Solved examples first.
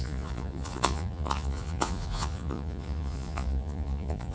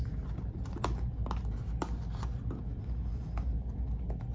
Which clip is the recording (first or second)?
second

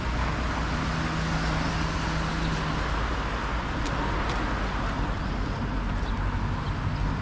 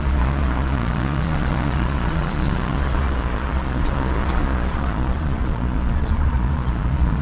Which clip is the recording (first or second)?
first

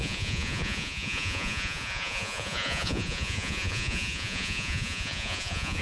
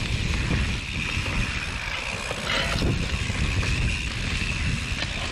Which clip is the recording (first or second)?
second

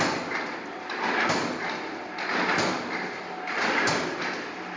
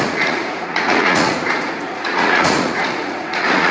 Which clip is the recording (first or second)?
first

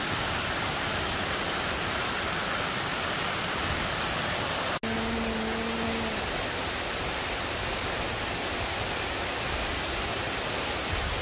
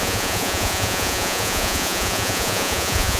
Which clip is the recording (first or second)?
first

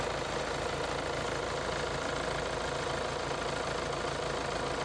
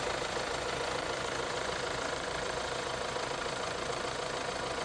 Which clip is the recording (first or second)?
first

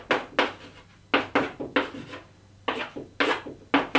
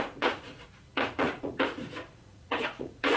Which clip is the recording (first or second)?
first